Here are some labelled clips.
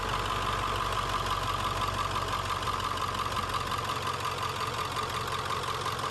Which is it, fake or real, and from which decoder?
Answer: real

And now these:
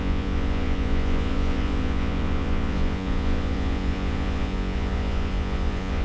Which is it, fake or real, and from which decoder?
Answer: fake, vocoder, Vocos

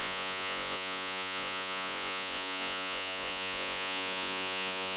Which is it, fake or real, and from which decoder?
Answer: fake, vocoder, Vocos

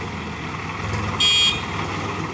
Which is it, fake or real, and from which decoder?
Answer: real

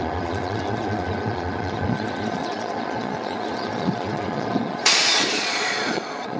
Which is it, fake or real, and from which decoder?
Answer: fake, vocoder, Vocos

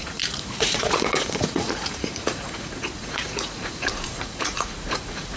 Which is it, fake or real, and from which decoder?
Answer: fake, vocoder, Vocos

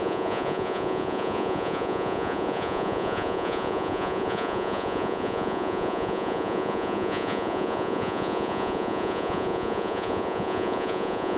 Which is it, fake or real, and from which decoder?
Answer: fake, vocoder, Vocos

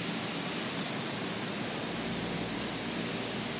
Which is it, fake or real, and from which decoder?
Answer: real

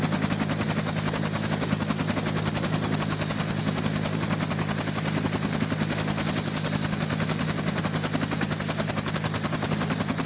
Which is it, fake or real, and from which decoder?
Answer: real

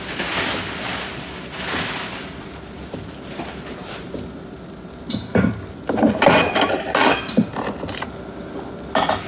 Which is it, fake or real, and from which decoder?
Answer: real